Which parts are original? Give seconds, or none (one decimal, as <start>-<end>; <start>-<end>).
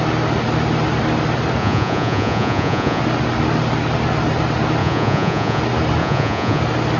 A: 0.0-1.6; 3.0-4.8; 5.6-6.0; 6.6-7.0